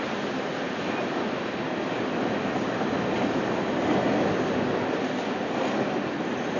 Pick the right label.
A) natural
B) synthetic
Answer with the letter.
A